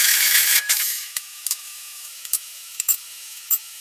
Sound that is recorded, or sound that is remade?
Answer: remade